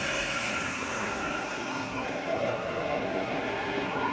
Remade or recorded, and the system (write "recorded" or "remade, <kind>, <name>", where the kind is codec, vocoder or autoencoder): remade, codec, SNAC